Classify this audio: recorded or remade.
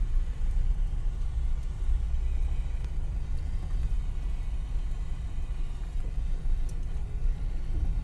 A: recorded